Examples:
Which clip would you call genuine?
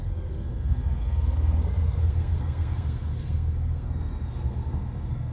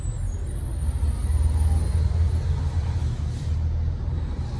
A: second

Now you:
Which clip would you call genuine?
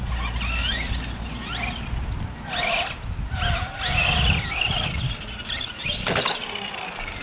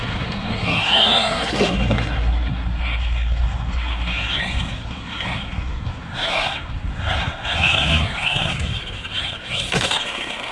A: first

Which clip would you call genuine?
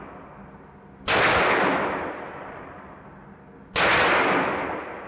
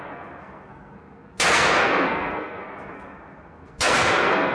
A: first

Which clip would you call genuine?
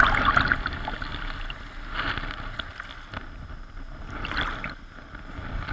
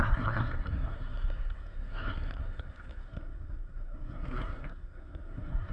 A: first